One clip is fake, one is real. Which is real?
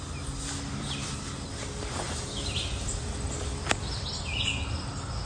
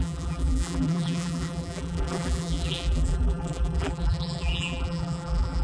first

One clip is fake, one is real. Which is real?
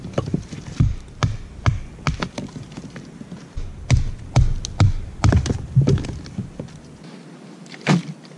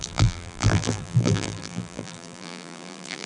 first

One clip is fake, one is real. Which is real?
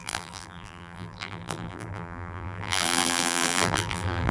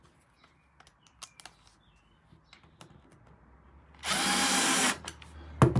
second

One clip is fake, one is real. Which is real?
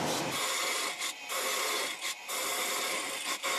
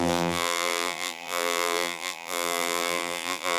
first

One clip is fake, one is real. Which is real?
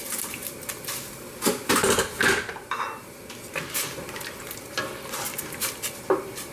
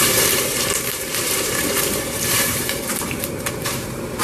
first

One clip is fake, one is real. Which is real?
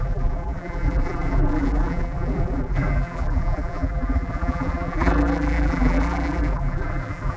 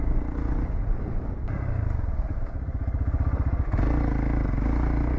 second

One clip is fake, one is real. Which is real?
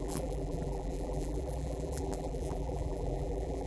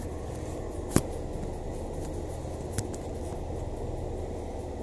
second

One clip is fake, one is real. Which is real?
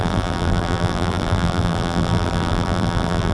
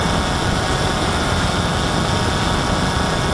second